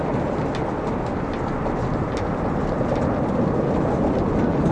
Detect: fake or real real